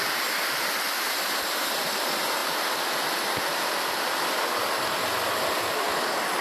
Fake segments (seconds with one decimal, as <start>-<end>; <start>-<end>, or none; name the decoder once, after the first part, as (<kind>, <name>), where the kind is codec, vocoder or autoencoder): none